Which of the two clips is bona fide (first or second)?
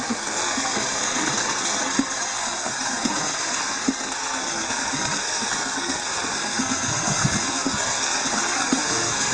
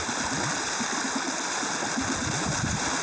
second